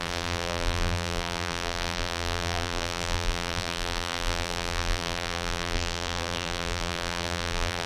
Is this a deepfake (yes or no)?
yes